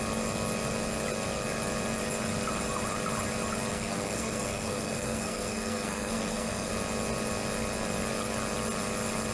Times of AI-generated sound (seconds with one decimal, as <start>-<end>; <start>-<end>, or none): 3.7-6.7